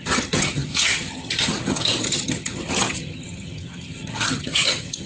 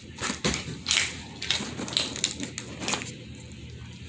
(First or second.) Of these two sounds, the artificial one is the first